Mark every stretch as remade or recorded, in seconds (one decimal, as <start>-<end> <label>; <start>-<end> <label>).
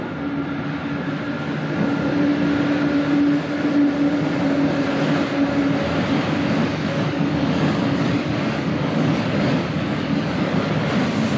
0.0-6.6 recorded; 6.6-10.9 remade; 10.9-11.4 recorded